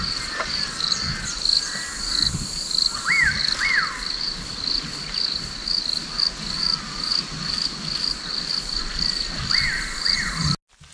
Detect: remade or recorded recorded